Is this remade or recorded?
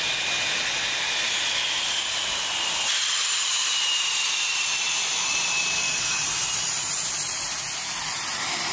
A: recorded